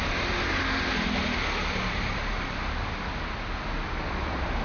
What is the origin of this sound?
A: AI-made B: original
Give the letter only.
B